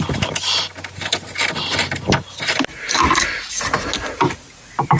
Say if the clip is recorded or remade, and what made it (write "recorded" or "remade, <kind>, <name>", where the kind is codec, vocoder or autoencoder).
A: recorded